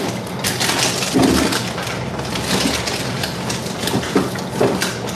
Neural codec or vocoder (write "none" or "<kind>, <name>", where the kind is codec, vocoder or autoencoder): none